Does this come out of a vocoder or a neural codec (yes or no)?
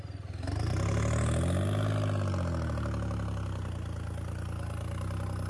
no